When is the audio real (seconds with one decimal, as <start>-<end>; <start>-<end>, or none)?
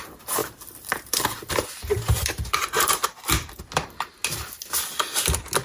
0.0-0.4; 3.6-5.6